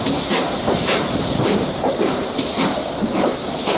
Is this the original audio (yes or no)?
no